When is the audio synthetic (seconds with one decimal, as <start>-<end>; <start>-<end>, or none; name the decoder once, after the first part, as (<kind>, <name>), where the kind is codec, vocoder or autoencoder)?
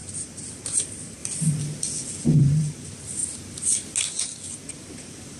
0.0-1.2 (vocoder, BigVGAN v2); 2.4-3.2; 4.7-5.4